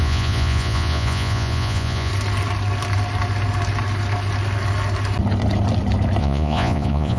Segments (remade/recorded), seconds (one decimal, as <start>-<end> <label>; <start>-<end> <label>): 0.0-2.1 remade; 2.1-6.2 recorded; 6.2-7.2 remade